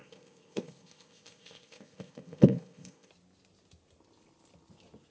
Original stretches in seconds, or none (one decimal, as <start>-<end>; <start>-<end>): 3.1-5.1